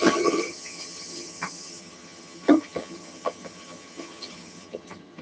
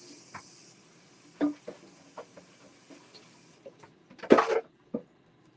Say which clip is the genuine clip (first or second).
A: second